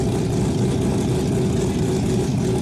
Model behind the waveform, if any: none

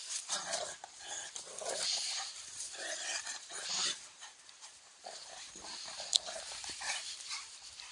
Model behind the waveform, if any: vocoder, BigVGAN v2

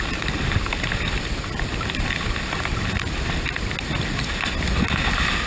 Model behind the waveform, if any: none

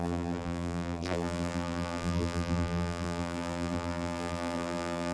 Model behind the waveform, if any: vocoder, BigVGAN v2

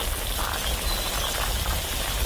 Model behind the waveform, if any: none